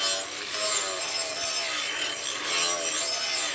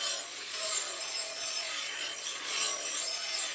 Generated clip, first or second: second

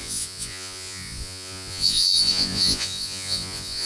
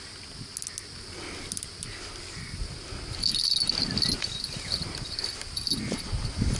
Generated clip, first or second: first